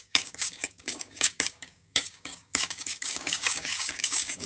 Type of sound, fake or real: fake